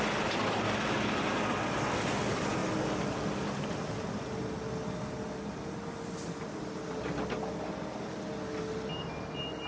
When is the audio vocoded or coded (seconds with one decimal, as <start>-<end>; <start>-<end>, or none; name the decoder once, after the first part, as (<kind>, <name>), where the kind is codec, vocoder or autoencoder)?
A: none